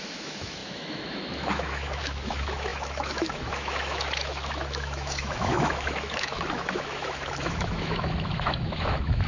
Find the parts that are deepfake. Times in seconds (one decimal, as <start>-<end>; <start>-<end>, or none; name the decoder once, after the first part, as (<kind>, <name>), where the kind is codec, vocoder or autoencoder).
0.0-9.3 (autoencoder, DAC-VAE)